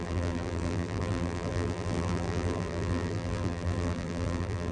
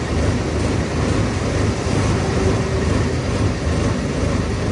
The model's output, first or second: first